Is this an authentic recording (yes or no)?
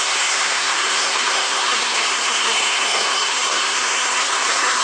no